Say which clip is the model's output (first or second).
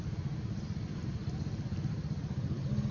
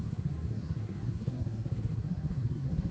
second